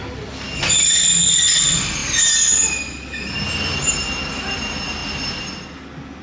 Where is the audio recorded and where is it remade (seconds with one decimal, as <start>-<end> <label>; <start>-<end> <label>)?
0.0-6.2 recorded